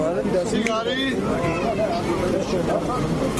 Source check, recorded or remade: recorded